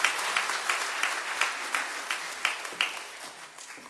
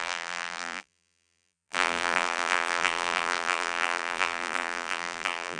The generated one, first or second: second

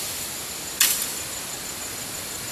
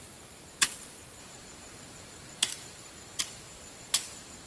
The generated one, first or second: second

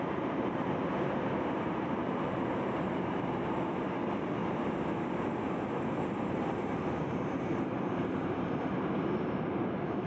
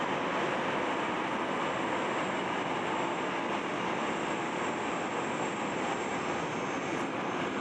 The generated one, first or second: first